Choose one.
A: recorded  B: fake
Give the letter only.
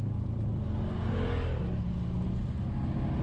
A